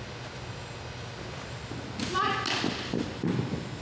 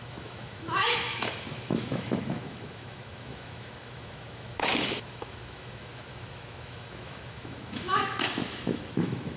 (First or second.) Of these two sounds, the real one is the first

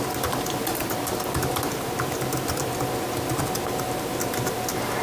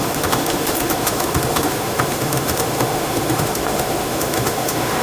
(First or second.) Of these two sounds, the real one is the first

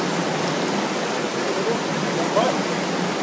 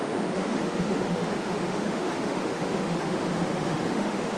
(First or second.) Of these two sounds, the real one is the first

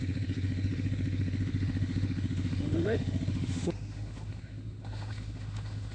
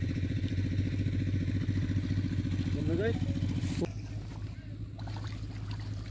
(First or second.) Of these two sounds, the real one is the second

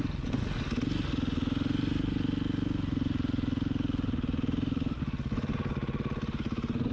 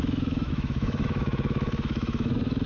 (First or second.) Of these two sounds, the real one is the first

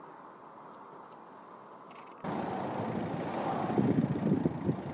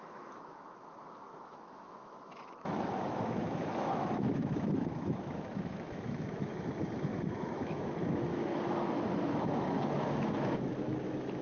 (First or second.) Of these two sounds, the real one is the first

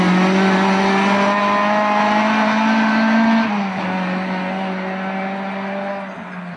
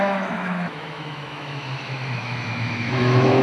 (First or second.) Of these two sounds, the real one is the first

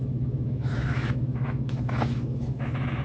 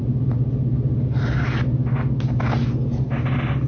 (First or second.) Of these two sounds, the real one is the second